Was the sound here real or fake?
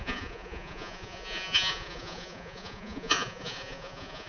fake